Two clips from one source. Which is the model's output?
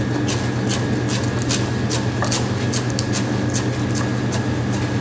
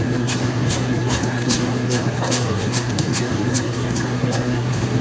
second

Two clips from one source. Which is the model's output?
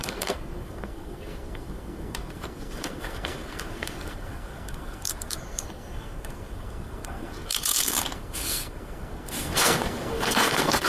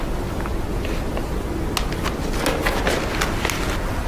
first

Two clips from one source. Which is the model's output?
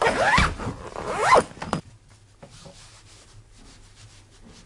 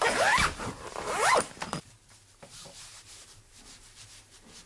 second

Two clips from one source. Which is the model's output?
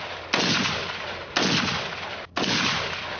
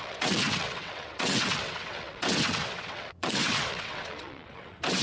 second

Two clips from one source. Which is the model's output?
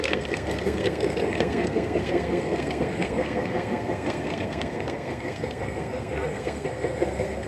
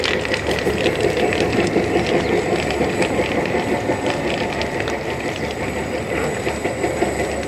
first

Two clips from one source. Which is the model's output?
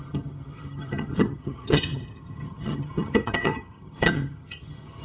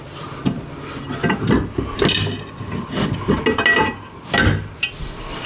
first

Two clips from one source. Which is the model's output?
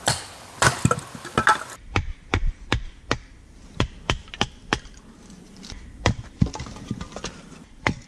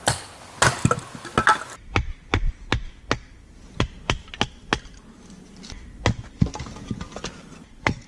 first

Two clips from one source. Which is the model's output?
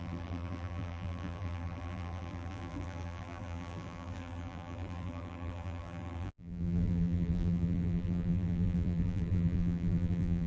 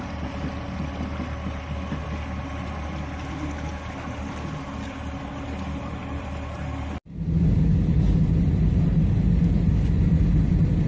first